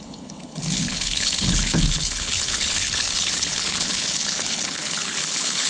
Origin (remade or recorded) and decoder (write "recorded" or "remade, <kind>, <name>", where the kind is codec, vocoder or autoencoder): remade, codec, HILCodec